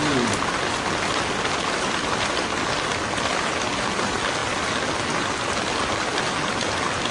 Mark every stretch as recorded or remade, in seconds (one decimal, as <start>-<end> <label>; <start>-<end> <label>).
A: 0.0-7.1 recorded